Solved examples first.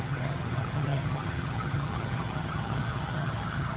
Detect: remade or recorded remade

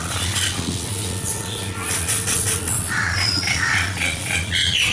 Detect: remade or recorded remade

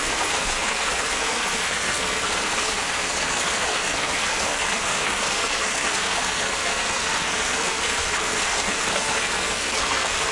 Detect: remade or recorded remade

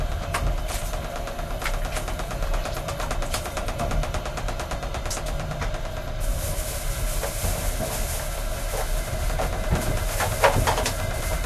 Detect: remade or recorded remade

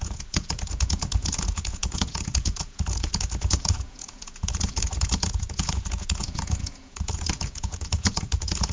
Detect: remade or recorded remade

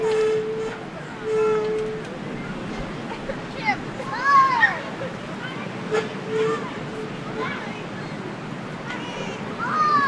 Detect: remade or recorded recorded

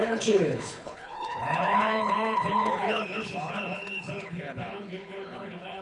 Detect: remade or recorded remade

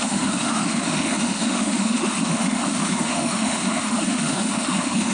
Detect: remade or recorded remade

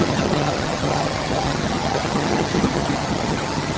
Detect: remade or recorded remade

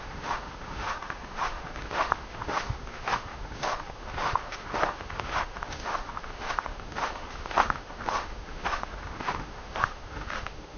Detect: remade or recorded remade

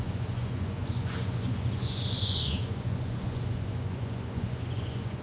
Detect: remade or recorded remade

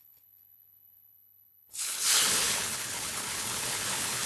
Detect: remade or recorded remade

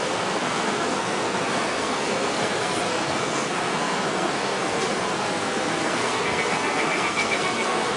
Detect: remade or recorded remade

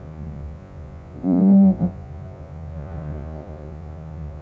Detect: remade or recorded remade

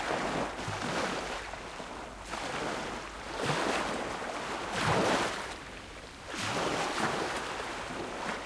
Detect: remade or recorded recorded